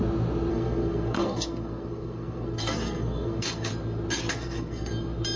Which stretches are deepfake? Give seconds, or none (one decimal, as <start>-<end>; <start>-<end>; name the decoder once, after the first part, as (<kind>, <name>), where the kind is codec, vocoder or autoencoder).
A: 0.5-3.7 (codec, SNAC); 4.3-4.9